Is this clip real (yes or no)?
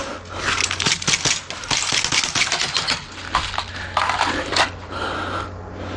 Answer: yes